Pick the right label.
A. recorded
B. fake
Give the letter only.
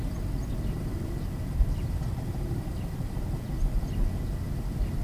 A